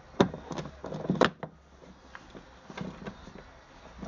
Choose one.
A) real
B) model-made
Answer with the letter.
A